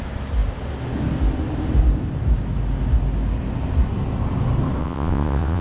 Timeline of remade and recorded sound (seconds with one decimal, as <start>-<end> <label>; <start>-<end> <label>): 0.0-4.8 recorded; 4.8-5.6 remade